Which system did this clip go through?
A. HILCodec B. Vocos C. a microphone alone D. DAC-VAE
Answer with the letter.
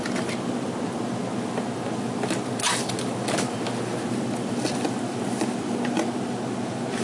C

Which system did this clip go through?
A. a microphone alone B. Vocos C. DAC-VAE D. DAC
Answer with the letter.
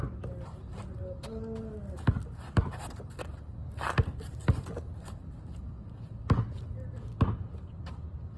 A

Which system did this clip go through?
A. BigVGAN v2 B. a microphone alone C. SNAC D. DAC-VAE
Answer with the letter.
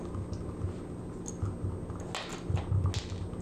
B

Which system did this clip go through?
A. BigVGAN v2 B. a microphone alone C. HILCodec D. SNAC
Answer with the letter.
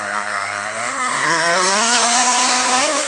D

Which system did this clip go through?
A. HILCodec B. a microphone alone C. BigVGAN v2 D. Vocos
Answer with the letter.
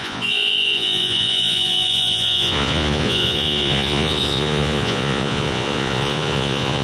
D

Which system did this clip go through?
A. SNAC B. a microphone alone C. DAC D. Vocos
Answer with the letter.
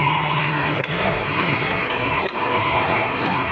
A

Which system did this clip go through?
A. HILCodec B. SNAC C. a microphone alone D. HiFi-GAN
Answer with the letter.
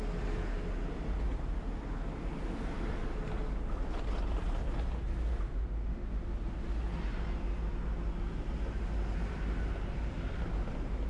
C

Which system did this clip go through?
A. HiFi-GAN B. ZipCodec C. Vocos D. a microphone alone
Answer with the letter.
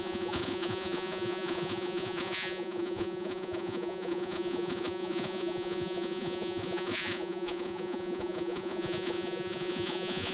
C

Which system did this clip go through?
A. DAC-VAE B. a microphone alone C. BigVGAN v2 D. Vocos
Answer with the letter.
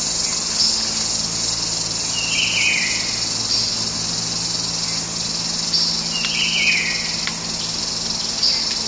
B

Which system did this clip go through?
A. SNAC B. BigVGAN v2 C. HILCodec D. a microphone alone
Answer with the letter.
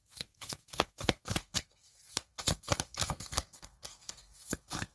A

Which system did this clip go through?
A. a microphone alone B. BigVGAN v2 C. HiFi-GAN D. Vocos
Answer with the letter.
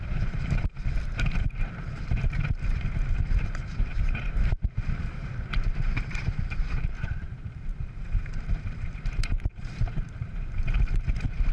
B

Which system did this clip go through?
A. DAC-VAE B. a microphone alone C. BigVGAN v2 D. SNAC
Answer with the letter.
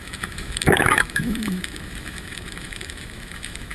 A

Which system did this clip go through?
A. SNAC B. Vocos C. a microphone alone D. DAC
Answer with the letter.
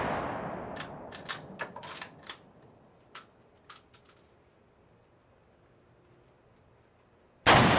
C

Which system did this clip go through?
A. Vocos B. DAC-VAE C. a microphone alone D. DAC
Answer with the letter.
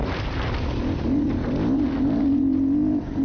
C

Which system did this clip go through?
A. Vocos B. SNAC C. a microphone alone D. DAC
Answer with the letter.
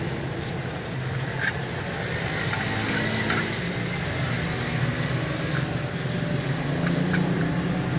C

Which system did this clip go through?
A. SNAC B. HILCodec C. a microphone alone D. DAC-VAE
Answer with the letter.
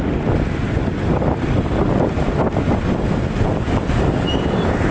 C